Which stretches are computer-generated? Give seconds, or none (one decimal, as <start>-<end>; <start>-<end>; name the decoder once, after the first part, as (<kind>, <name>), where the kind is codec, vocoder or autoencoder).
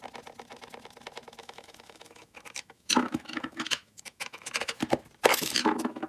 1.4-4.8 (autoencoder, DAC-VAE); 5.3-6.1